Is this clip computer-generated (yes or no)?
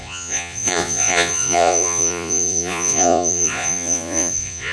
yes